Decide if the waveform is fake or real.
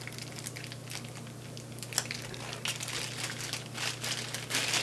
real